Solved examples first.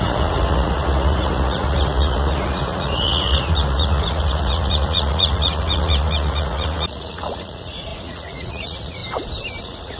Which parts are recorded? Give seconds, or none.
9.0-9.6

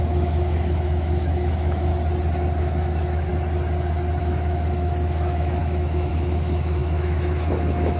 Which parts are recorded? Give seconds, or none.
1.9-2.6; 3.3-4.2

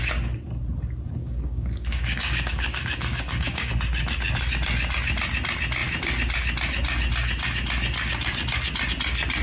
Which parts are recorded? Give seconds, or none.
0.0-1.2; 3.7-9.4

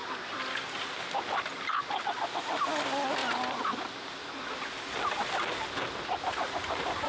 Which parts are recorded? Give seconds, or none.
0.0-7.1